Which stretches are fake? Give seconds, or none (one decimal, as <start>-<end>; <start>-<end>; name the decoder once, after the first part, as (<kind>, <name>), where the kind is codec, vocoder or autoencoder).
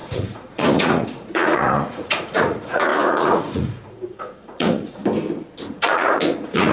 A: 0.0-5.0 (vocoder, Vocos); 5.7-6.7